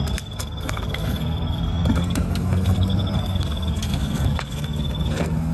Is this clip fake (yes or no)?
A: yes